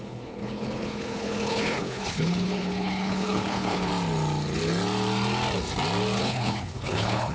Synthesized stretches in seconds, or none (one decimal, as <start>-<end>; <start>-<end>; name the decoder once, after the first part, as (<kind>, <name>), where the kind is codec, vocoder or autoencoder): 0.0-3.9 (codec, HILCodec); 6.2-7.3